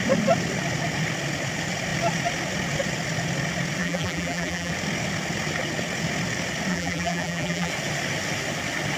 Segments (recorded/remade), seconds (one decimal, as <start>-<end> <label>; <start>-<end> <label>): 0.0-3.8 recorded; 3.8-4.7 remade; 4.7-6.7 recorded; 6.7-7.7 remade; 7.7-9.0 recorded